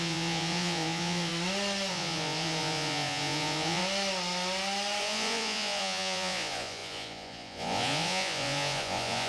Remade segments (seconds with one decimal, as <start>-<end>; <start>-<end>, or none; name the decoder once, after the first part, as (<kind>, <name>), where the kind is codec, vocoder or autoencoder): 0.0-1.3 (vocoder, Vocos); 1.9-3.8; 5.0-9.3